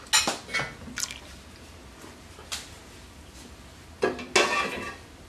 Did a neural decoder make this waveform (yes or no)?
no